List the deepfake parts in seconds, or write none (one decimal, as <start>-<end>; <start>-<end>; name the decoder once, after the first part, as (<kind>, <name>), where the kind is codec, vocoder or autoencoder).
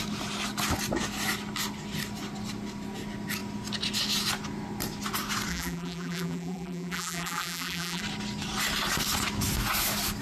5.5-8.0 (vocoder, BigVGAN v2)